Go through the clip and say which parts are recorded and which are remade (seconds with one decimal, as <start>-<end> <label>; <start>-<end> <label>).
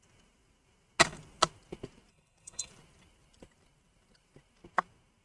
0.0-2.1 recorded; 2.1-2.7 remade; 2.7-5.2 recorded